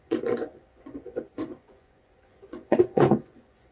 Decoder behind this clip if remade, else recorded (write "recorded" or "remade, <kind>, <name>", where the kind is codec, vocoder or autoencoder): remade, vocoder, Vocos